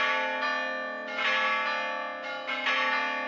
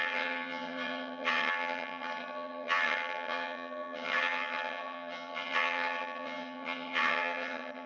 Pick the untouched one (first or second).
first